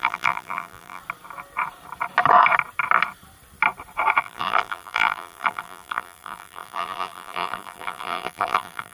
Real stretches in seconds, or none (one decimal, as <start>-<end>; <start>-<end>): 1.0-4.2